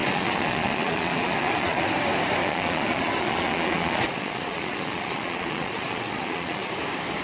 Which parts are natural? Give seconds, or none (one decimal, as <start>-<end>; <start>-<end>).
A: 1.9-2.4; 6.7-7.2